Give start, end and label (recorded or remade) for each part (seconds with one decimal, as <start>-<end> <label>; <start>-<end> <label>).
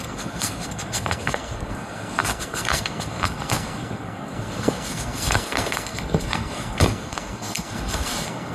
0.0-8.5 remade